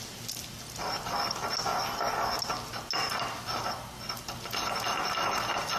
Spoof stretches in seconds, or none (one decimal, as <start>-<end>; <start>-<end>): none